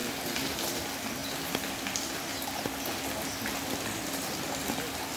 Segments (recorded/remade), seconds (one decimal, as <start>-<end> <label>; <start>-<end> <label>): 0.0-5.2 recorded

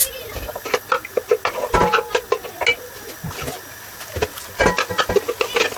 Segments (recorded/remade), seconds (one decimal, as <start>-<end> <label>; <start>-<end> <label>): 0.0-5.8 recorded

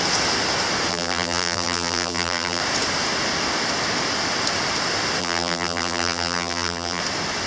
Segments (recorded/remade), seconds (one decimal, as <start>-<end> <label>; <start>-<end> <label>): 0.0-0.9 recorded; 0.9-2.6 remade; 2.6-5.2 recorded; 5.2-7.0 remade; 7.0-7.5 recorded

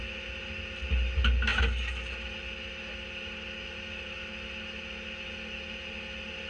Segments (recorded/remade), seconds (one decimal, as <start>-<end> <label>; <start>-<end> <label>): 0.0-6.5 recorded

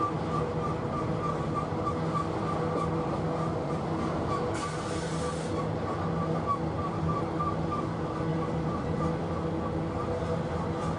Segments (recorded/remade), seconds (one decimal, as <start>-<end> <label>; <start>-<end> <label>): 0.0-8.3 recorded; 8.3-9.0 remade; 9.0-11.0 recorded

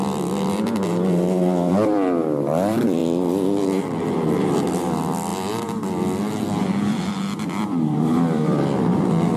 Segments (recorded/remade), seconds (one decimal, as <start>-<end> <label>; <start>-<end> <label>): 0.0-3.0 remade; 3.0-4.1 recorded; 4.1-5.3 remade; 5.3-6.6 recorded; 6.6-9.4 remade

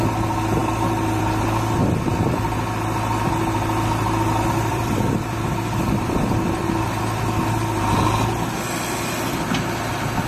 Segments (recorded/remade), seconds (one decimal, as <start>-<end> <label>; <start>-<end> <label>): 0.0-0.6 recorded; 0.6-1.2 remade; 1.2-1.8 recorded; 1.8-7.0 remade; 7.0-10.3 recorded